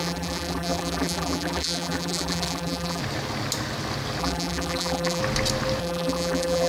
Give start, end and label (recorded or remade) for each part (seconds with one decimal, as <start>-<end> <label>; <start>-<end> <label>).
0.0-3.0 remade; 3.0-4.2 recorded; 4.2-5.2 remade; 5.2-5.8 recorded; 5.8-6.7 remade